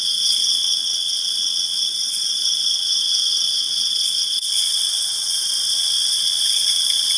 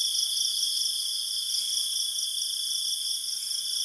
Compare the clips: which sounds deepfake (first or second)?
first